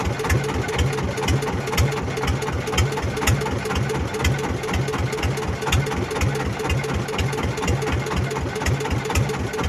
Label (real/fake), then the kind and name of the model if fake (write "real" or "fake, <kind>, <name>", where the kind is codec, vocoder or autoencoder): real